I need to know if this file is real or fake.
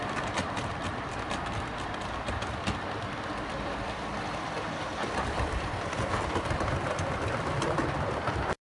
fake